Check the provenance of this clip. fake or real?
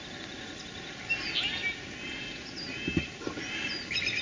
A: real